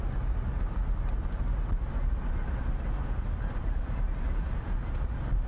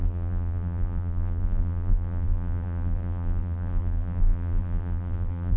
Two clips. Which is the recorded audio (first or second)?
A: first